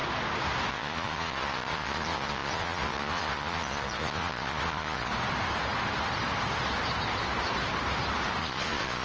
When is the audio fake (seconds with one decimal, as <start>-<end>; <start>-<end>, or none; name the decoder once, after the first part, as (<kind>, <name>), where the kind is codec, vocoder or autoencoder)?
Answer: 0.7-5.1 (vocoder, Vocos); 8.4-9.0